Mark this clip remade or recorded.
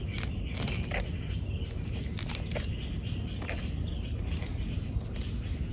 recorded